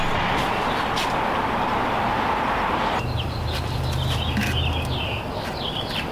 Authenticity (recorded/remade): recorded